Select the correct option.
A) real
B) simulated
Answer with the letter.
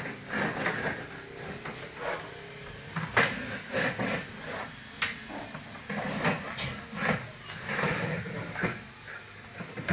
A